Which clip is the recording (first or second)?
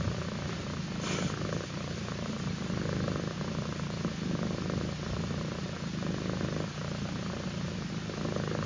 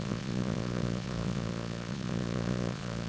first